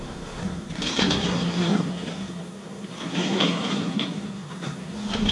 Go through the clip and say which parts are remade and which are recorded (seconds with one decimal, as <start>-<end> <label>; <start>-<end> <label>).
0.0-5.3 remade